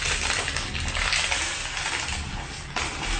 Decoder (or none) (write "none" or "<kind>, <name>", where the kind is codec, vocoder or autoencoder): none